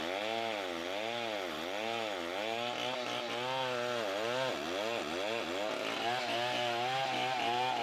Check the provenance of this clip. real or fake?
real